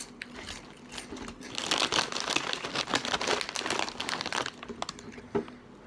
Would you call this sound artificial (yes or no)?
no